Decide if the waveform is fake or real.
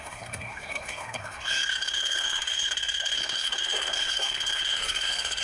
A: fake